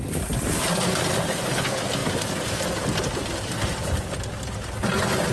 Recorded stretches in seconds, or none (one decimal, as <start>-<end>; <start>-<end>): 0.0-5.3